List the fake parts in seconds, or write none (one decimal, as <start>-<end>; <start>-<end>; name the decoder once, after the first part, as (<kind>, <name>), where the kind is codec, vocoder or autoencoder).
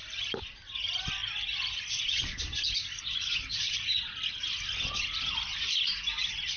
none